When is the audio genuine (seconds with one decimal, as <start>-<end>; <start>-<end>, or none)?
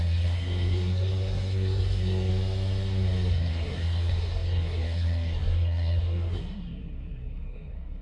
2.3-3.3